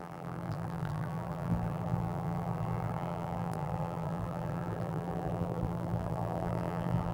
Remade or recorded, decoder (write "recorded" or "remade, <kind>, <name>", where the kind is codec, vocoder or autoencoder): remade, vocoder, BigVGAN v2